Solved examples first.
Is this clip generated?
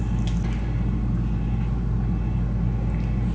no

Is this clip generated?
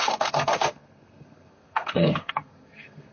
yes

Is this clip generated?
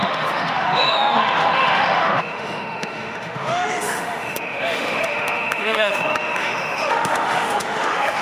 yes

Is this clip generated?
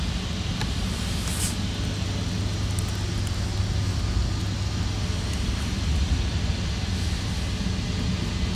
no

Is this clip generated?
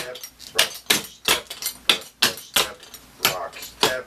no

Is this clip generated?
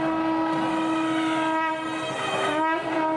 no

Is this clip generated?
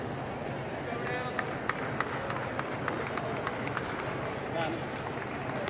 no